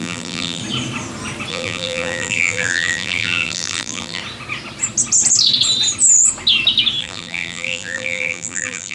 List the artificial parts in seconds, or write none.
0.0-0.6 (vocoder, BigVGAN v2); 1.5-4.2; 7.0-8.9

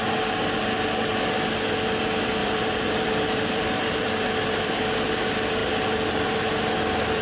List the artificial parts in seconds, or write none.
2.4-4.8 (vocoder, BigVGAN v2)

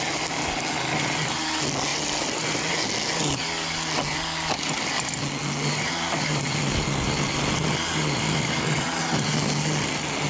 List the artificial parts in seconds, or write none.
1.9-2.7 (vocoder, BigVGAN v2)

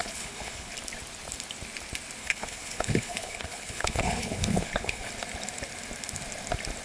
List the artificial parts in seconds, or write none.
0.0-0.7 (codec, HILCodec); 2.2-5.1

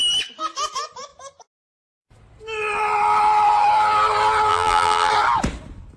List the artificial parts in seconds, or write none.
4.5-5.1 (vocoder, BigVGAN v2)

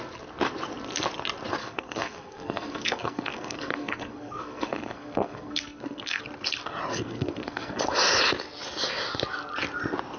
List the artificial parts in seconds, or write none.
1.6-6.2 (codec, SNAC); 6.9-7.8

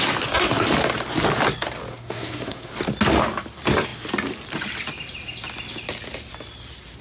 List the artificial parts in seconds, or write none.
1.9-2.7 (codec, SNAC)

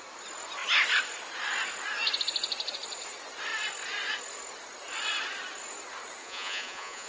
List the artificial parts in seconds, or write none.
6.2-7.1 (vocoder, Vocos)